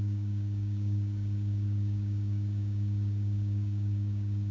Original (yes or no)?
no